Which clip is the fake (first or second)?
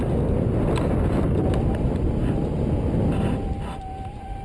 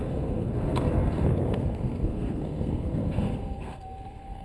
second